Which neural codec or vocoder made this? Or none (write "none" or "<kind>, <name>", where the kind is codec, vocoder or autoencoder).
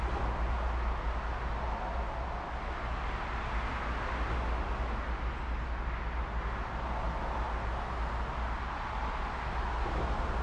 none